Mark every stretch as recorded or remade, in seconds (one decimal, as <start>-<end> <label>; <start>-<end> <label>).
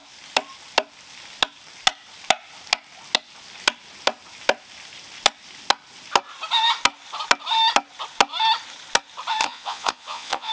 0.0-9.4 recorded; 9.4-10.5 remade